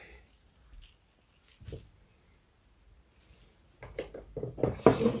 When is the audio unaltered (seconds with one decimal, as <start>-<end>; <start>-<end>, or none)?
0.0-5.2